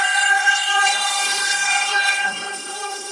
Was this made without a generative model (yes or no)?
no